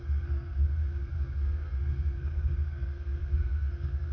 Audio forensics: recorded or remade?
remade